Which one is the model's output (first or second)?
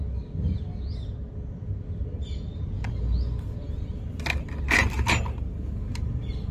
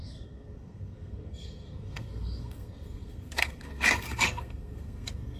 second